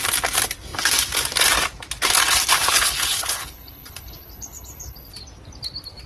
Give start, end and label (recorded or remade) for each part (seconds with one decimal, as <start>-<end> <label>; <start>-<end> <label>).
0.0-2.5 recorded; 2.5-5.1 remade; 5.1-6.1 recorded